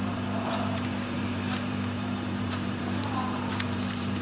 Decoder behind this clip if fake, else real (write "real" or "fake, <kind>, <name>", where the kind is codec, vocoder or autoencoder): fake, vocoder, BigVGAN v2